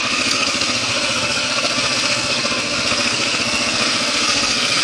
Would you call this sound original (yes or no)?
no